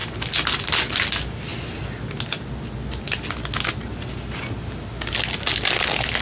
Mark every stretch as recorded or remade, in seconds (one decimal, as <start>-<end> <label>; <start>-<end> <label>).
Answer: 0.0-6.2 recorded